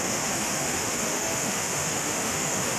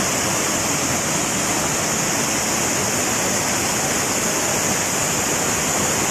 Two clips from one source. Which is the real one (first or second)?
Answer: second